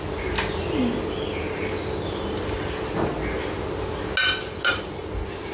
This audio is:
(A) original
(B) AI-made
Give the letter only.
A